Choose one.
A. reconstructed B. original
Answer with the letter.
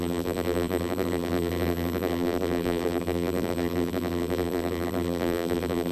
A